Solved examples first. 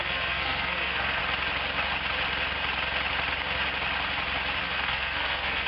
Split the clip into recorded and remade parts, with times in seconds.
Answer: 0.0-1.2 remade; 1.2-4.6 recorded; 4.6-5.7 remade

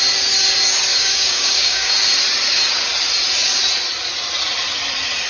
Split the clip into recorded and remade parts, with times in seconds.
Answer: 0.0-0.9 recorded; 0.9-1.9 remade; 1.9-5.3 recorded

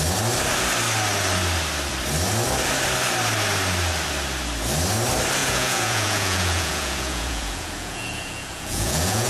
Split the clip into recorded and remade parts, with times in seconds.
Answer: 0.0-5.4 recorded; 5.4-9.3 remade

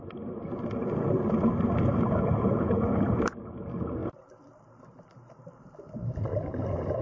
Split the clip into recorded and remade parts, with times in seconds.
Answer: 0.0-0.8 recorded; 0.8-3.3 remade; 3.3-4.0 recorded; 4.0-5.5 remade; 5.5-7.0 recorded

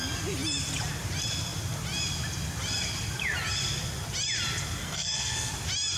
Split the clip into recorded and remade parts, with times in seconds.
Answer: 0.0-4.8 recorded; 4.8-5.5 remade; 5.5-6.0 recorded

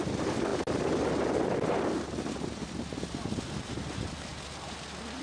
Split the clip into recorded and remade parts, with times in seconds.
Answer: 0.0-5.2 recorded

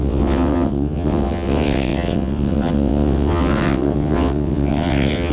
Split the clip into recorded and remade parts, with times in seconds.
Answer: 0.0-5.3 remade